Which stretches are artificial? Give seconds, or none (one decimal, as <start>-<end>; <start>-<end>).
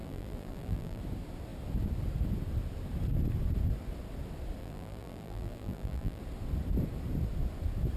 0.0-1.0; 4.6-6.2